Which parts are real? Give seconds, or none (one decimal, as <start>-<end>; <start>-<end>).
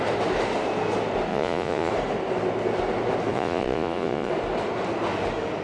0.0-1.3; 1.9-3.3; 4.3-5.6